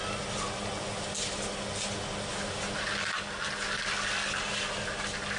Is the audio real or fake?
real